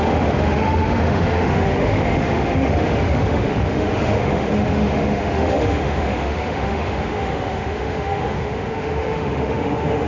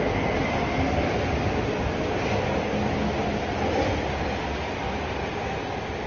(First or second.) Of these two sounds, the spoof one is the first